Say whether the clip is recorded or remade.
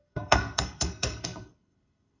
remade